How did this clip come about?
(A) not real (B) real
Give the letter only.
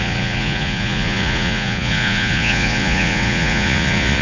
A